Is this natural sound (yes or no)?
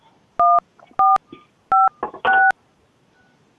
yes